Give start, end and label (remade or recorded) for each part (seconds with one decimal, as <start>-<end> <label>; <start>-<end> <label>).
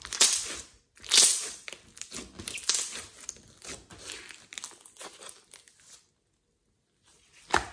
0.0-7.7 recorded